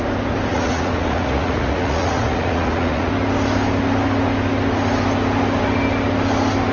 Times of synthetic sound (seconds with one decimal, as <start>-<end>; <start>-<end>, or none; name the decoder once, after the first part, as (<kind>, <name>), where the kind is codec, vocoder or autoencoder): 0.5-3.1 (vocoder, Vocos)